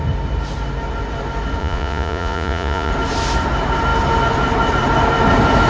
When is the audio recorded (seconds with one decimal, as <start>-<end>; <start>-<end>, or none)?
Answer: 0.0-1.6; 2.9-5.7

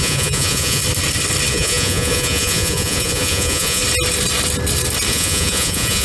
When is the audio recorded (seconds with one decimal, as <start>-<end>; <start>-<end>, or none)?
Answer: 0.8-1.5; 3.8-5.1

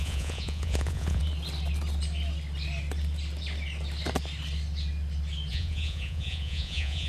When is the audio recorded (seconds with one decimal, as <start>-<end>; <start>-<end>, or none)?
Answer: 1.2-5.5

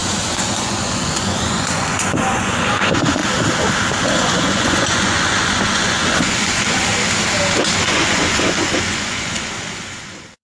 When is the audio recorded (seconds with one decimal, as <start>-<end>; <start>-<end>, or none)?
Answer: 3.2-4.0; 6.9-7.8

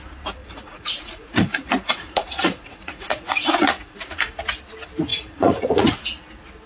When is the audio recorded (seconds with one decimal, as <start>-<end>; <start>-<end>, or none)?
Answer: 0.0-0.4; 4.4-5.1; 5.8-6.7

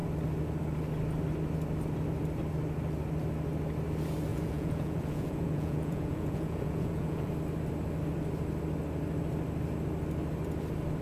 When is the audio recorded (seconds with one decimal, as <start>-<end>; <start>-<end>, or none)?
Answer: 0.0-4.3; 7.3-11.0

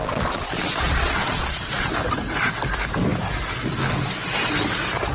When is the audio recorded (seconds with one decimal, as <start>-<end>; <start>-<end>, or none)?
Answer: 1.9-5.1

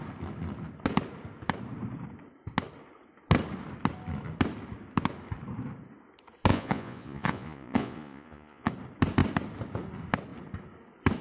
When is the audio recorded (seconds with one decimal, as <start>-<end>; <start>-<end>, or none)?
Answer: 0.0-6.5; 8.7-11.2